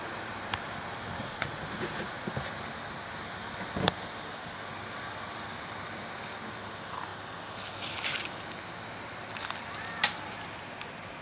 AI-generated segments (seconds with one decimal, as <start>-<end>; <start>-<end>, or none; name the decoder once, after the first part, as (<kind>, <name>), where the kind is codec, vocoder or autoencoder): 1.2-2.3 (vocoder, Vocos)